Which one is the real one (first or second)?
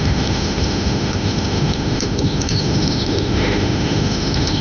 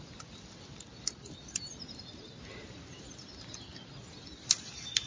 second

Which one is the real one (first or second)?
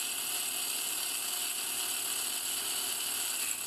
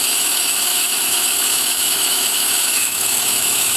first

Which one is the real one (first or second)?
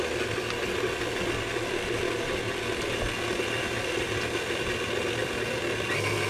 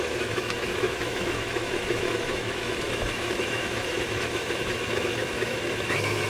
first